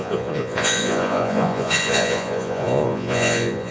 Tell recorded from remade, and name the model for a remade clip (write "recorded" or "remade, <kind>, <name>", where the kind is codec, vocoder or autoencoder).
remade, vocoder, Vocos